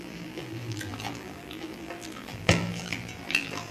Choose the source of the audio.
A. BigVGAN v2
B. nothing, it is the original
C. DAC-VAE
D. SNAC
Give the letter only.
A